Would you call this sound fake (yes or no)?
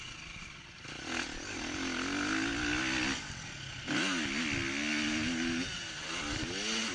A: no